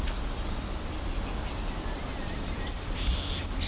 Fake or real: real